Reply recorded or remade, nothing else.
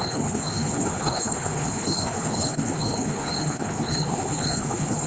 remade